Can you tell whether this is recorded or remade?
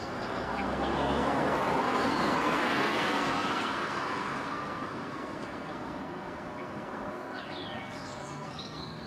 remade